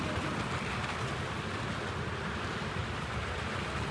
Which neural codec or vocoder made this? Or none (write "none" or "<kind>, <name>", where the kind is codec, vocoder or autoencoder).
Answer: none